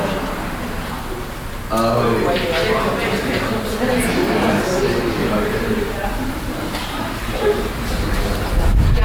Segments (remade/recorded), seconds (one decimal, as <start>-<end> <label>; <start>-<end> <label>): 0.0-5.2 recorded; 5.2-9.0 remade